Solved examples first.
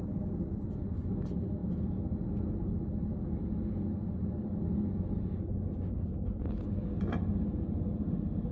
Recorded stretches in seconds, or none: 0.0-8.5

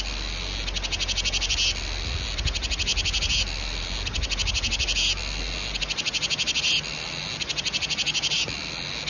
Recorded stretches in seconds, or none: 0.0-9.1

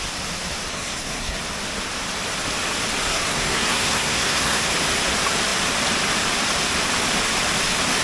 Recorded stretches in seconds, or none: 0.0-0.7; 1.4-3.1; 4.7-8.0

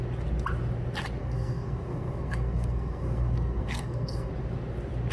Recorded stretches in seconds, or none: 0.0-1.2; 4.3-5.1

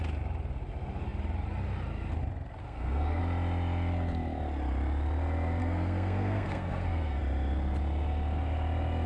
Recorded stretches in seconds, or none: 0.0-2.6; 3.2-5.6; 7.2-9.1